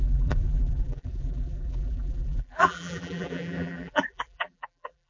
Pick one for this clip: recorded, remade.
remade